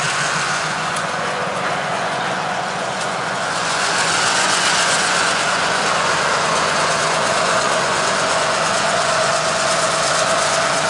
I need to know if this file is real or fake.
fake